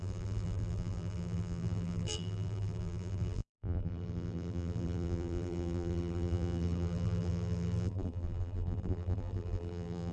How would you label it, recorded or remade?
remade